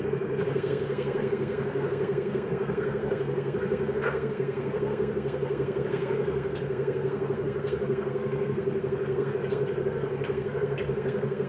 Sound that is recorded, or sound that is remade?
remade